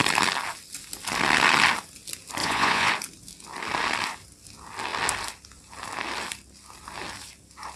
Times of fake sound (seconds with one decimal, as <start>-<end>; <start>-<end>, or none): 2.4-2.9